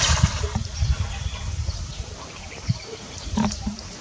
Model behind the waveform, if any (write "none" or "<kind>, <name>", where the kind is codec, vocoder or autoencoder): vocoder, BigVGAN v2